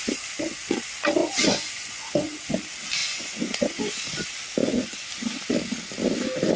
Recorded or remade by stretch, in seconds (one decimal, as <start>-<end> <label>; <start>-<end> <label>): 0.0-1.2 recorded; 1.2-2.5 remade; 2.5-3.0 recorded; 3.0-3.8 remade; 3.8-4.6 recorded; 4.6-5.1 remade; 5.1-6.6 recorded